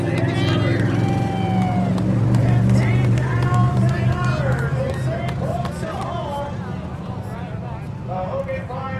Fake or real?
real